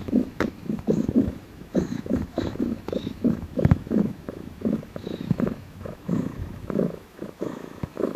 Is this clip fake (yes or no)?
yes